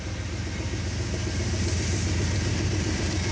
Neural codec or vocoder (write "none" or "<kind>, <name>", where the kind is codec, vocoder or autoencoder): none